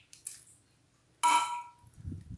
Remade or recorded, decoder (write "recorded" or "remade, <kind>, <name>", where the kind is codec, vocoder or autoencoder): recorded